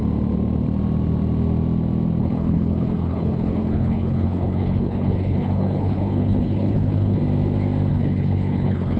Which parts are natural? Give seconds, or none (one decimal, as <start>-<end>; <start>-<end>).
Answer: 0.0-2.2; 7.2-7.9